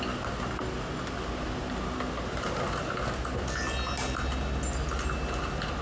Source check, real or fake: real